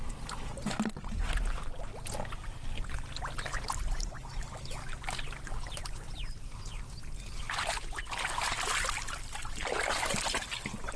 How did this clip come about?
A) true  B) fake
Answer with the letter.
A